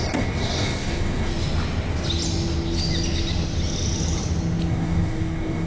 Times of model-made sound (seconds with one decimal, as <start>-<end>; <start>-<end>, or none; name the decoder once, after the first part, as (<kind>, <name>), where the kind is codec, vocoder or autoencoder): 0.0-1.3 (codec, DAC); 4.7-5.7